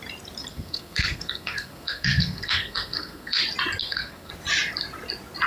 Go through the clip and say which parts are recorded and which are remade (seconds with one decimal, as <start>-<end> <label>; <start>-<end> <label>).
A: 0.0-0.5 recorded; 0.5-3.4 remade; 3.4-3.8 recorded; 3.8-4.3 remade; 4.3-5.5 recorded

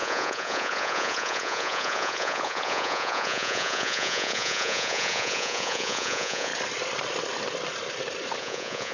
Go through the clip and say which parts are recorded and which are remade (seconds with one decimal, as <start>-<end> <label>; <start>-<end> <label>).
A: 0.0-6.5 remade; 6.5-8.4 recorded; 8.4-8.9 remade